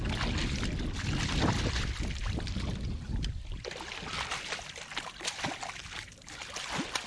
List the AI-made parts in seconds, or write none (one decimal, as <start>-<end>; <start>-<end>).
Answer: none